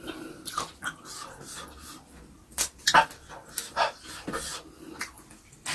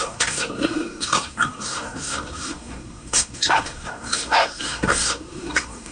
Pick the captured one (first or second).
first